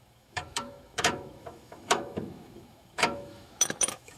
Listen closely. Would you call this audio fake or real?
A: fake